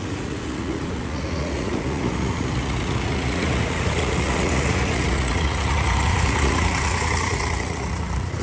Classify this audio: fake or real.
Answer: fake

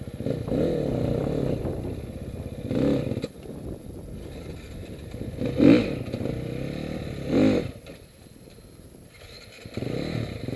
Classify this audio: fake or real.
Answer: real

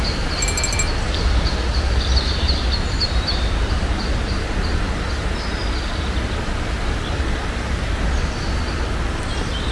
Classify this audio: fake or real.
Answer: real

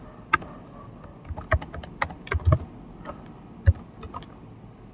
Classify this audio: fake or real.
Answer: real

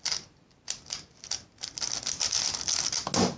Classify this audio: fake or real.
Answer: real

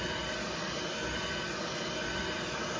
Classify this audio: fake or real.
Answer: real